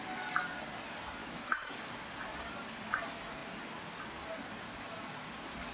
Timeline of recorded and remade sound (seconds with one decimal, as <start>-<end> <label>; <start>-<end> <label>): 0.0-1.2 recorded; 1.2-1.9 remade; 1.9-5.7 recorded